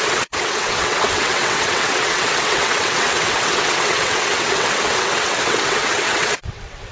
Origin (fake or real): fake